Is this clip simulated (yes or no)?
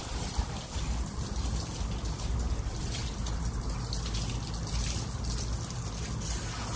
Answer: no